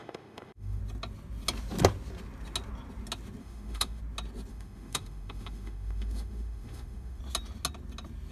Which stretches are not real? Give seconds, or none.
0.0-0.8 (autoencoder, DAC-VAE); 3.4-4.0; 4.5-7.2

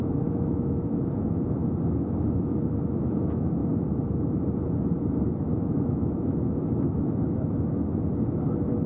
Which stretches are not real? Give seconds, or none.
0.0-1.6 (autoencoder, DAC-VAE); 2.2-3.6; 5.4-7.9

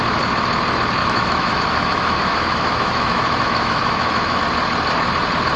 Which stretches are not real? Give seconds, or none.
1.0-4.4 (autoencoder, DAC-VAE)

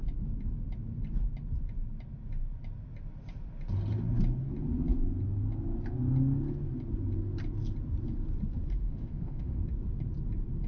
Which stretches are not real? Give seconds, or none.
8.8-9.6 (autoencoder, DAC-VAE)

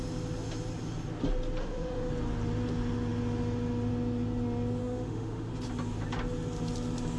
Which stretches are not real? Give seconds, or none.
1.6-2.1 (autoencoder, DAC-VAE); 4.8-5.5

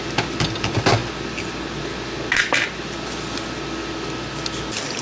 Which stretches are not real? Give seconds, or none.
none